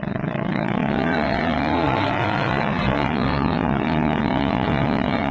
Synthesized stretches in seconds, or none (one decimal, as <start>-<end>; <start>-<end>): 0.0-5.3